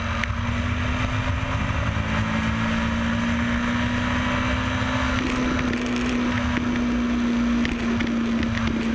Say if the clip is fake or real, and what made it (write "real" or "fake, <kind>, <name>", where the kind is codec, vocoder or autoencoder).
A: real